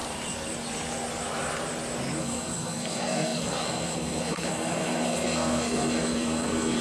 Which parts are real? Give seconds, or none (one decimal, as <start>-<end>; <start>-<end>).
0.0-2.2